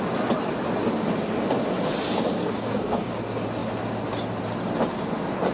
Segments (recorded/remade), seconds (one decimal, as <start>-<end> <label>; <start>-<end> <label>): 0.0-2.4 recorded; 2.4-3.1 remade; 3.1-5.5 recorded

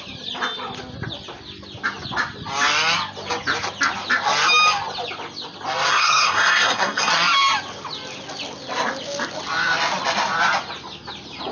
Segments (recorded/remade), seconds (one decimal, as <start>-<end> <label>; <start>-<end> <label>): 0.0-5.9 recorded; 5.9-7.1 remade; 7.1-11.5 recorded